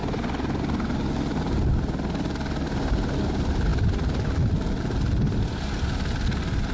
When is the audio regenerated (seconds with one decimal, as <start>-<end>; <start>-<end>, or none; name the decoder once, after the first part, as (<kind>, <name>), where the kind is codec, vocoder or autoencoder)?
3.7-4.8 (vocoder, BigVGAN v2)